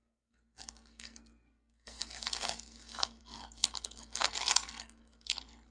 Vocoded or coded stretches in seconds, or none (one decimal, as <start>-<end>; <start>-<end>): 0.0-5.7